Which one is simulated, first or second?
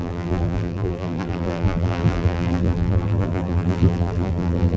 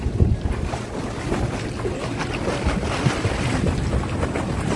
first